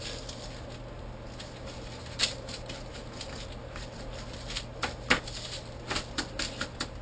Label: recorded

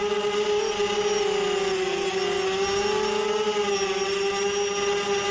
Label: recorded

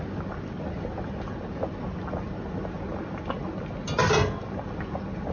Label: recorded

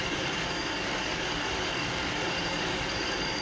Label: remade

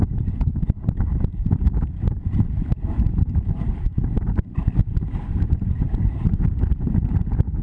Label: remade